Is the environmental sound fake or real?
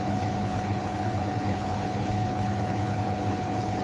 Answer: fake